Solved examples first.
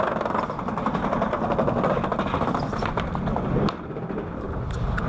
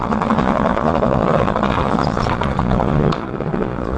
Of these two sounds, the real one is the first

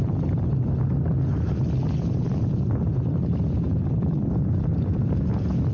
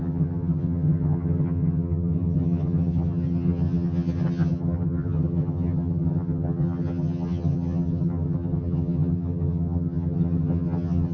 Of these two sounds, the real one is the first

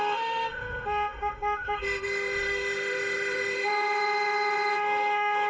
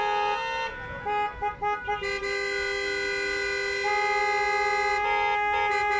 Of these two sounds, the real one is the second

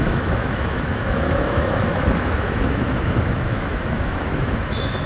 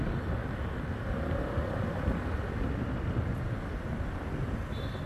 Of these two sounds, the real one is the second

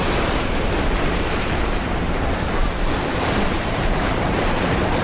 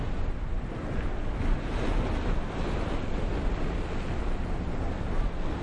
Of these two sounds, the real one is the second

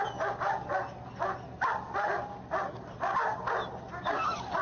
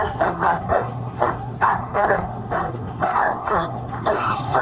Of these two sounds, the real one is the first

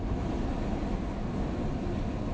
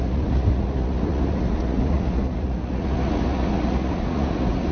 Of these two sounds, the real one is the first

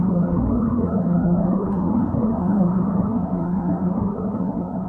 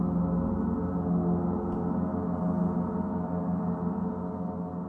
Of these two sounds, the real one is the second